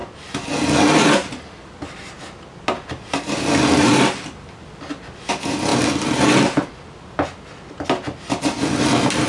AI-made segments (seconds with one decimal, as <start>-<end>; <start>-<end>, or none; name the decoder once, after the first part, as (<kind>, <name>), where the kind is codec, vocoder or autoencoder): none